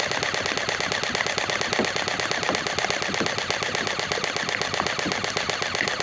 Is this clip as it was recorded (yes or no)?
yes